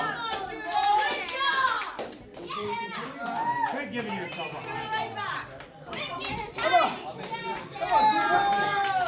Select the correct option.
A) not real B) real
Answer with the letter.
B